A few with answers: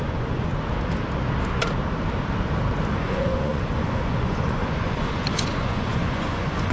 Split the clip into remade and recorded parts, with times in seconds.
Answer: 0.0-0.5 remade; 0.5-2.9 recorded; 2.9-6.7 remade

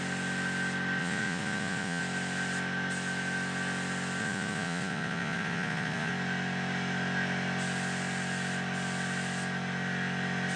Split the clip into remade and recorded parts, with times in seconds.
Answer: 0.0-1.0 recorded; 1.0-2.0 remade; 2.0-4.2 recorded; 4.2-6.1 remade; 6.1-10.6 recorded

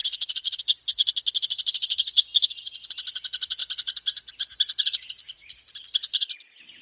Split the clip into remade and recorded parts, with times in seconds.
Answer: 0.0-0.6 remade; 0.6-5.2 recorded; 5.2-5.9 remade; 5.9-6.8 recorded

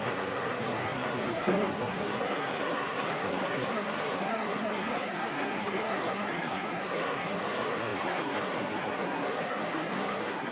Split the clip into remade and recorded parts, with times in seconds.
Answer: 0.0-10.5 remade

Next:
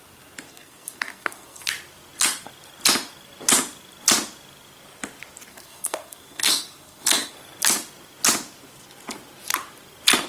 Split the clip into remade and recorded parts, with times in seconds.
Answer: 0.0-0.5 recorded; 0.5-1.7 remade; 1.7-5.5 recorded; 5.5-7.3 remade; 7.3-10.3 recorded

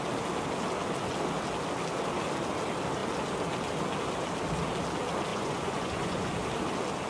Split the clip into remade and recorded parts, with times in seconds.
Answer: 0.0-5.3 recorded; 5.3-6.3 remade; 6.3-7.1 recorded